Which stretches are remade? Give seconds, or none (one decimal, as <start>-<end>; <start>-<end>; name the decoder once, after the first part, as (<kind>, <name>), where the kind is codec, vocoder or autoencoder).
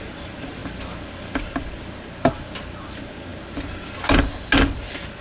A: none